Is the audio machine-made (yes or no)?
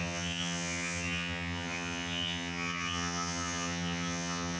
yes